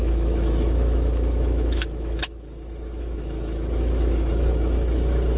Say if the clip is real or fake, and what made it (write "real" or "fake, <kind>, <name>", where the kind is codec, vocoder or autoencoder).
fake, autoencoder, DAC-VAE